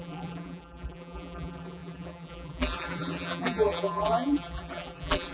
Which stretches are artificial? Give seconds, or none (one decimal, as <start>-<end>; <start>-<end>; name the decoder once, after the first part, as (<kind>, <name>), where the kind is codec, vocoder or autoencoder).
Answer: 0.0-5.3 (vocoder, BigVGAN v2)